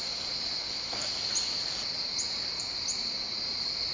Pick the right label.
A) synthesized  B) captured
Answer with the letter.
B